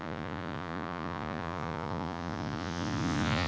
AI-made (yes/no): yes